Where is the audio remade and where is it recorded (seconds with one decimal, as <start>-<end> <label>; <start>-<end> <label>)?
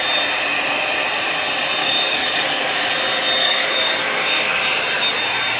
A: 0.0-1.8 recorded; 1.8-2.9 remade; 2.9-3.4 recorded; 3.4-4.6 remade; 4.6-5.6 recorded